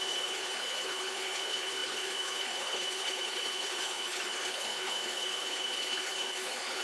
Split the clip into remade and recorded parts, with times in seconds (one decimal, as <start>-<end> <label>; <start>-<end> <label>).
0.0-6.8 remade